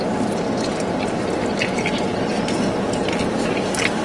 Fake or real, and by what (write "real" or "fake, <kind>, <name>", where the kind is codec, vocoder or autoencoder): real